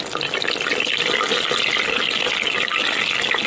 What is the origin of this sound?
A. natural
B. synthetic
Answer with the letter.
A